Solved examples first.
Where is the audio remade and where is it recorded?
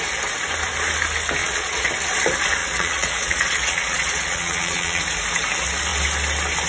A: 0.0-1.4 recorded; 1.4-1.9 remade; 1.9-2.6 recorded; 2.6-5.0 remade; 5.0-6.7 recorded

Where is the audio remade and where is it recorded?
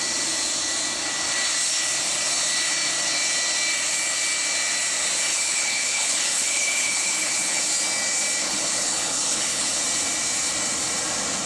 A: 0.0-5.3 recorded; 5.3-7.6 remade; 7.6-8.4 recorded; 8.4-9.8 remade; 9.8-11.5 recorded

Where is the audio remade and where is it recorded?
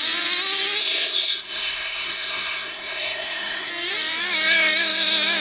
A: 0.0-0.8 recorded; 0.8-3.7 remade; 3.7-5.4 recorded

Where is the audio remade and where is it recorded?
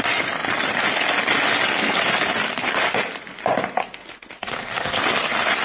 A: 0.0-4.4 recorded; 4.4-5.0 remade; 5.0-5.6 recorded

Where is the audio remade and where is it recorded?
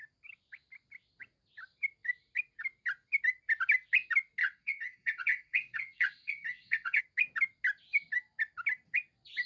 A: 0.0-4.4 recorded; 4.4-7.0 remade; 7.0-9.5 recorded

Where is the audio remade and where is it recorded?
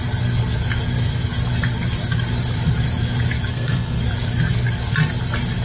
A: 0.0-3.5 recorded; 3.5-4.0 remade; 4.0-5.6 recorded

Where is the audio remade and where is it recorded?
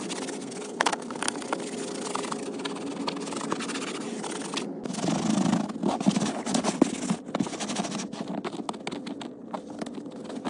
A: 0.0-0.4 recorded; 0.4-1.2 remade; 1.2-10.5 recorded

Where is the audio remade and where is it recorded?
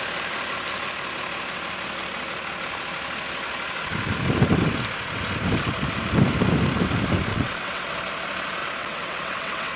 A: 0.0-7.3 recorded; 7.3-7.9 remade; 7.9-8.8 recorded; 8.8-9.8 remade